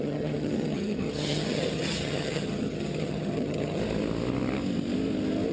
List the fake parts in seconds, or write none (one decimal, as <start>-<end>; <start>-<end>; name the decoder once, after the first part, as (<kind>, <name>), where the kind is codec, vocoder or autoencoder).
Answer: 0.0-3.8 (vocoder, HiFi-GAN)